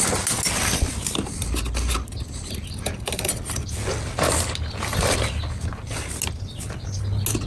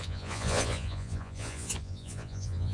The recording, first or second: first